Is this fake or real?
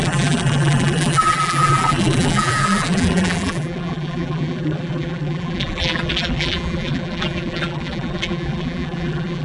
fake